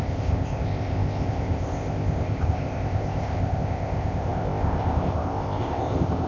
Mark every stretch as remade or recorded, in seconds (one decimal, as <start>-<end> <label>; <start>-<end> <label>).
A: 0.0-6.3 remade